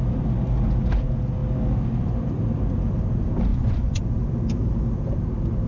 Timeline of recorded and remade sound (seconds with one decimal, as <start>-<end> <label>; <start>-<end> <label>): 0.0-3.5 recorded; 3.5-4.0 remade; 4.0-5.7 recorded